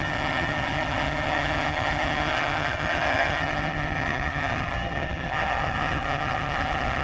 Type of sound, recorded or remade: remade